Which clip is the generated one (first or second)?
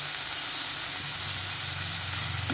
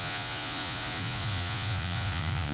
second